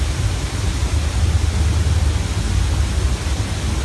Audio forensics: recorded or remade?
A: recorded